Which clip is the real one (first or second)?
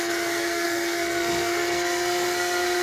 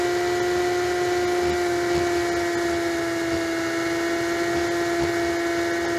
second